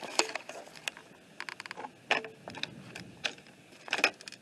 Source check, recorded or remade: recorded